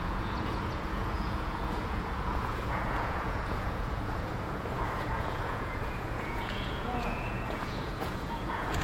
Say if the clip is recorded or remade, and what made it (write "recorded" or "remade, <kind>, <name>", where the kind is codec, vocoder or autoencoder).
remade, vocoder, Vocos